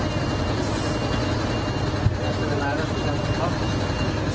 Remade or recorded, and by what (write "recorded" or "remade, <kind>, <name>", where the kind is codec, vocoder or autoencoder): recorded